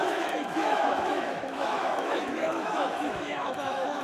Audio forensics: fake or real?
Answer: fake